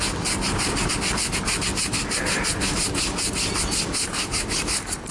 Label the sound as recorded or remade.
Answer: recorded